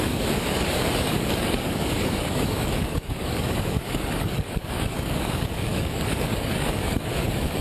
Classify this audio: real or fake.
fake